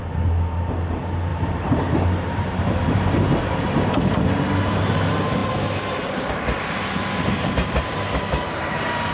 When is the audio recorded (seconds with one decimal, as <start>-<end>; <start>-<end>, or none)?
0.0-1.3; 3.3-9.1